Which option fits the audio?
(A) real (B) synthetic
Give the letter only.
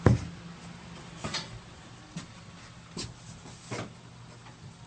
A